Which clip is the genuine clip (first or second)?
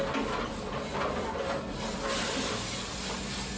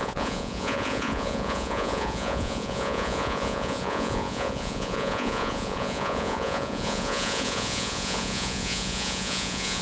first